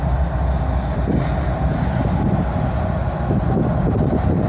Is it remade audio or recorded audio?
recorded